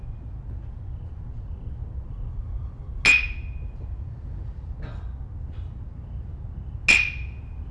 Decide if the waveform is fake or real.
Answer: real